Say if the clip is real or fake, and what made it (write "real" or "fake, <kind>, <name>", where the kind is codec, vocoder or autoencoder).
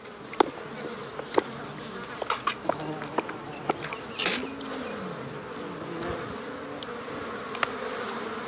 real